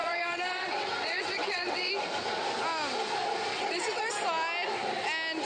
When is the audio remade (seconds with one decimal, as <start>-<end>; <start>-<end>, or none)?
0.0-1.9; 3.5-4.1